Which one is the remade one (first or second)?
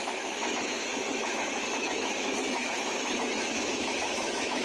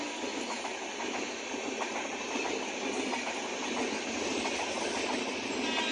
first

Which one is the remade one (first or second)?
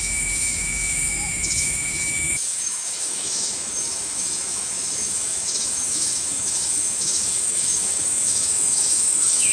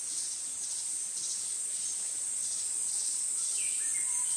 first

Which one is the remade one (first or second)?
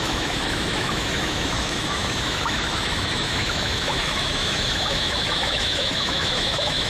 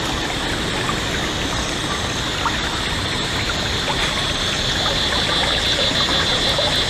first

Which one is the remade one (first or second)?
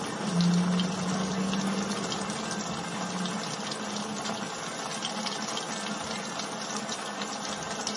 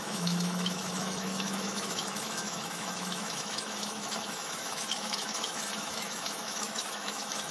second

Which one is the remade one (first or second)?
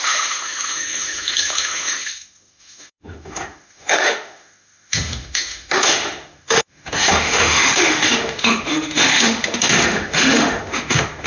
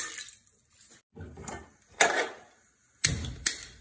first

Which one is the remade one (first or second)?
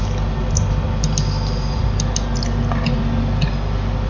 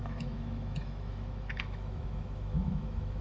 second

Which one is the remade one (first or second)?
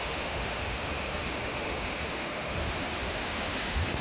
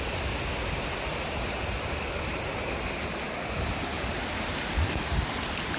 first